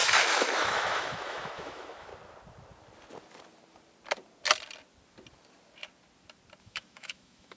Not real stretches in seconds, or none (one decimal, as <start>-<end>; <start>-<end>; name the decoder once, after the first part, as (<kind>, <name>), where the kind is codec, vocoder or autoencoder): 0.0-2.1 (autoencoder, DAC-VAE); 6.6-7.6